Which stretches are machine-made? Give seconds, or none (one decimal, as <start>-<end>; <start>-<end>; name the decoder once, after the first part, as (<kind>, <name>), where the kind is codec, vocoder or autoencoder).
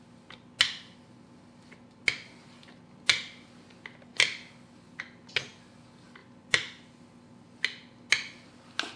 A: none